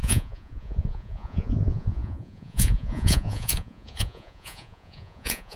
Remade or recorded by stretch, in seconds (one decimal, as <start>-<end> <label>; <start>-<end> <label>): 0.0-5.6 remade